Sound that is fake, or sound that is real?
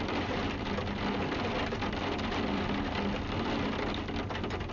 real